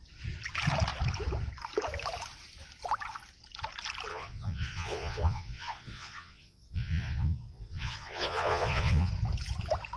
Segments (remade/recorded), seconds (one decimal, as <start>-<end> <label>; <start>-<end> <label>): 0.0-4.1 recorded; 4.1-9.1 remade; 9.1-10.0 recorded